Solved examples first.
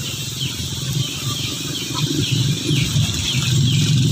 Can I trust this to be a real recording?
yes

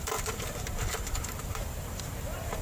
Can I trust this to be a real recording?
no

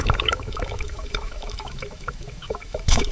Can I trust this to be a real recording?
no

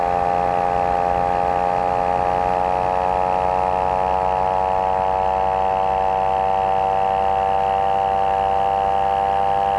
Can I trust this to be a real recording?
yes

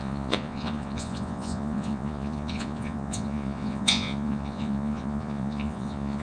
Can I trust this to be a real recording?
no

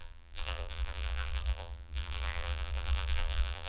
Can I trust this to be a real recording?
no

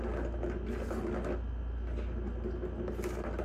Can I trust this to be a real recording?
yes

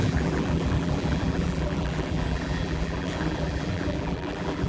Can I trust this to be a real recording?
no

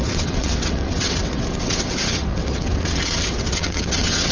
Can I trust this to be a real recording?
no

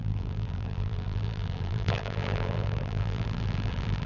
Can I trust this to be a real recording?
no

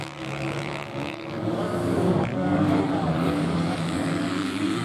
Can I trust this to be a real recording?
no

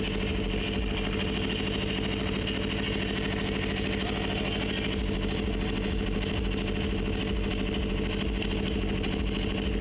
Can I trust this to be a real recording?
yes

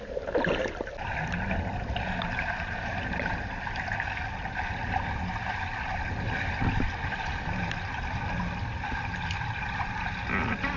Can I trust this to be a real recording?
yes